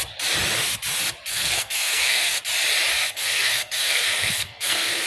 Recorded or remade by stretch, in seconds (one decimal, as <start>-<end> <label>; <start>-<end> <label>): 0.0-1.3 recorded; 1.3-2.4 remade; 2.4-3.0 recorded; 3.0-5.1 remade